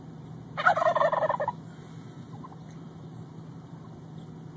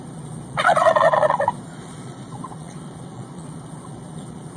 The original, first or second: first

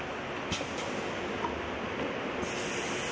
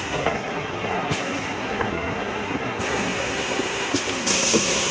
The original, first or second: first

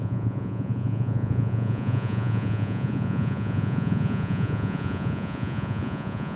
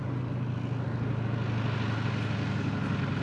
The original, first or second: second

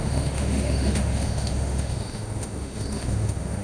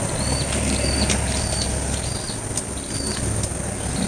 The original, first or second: second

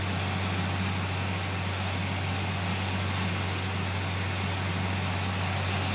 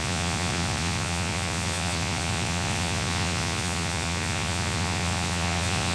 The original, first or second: first